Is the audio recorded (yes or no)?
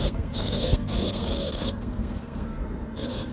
no